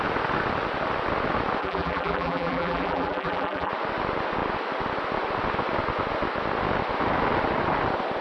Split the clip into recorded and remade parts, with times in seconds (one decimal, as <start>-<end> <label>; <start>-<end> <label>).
0.0-1.6 recorded; 1.6-3.7 remade; 3.7-8.2 recorded